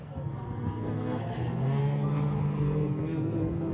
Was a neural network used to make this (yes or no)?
yes